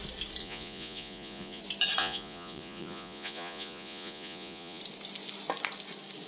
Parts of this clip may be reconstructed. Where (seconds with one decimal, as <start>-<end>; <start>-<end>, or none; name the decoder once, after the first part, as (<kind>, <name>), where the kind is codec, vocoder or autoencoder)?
0.4-1.6 (vocoder, Vocos); 2.0-4.8